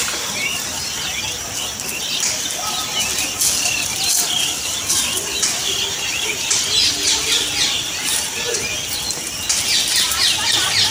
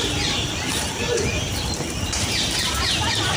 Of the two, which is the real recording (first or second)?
first